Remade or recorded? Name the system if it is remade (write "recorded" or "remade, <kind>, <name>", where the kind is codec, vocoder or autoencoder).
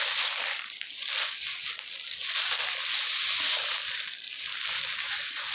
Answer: recorded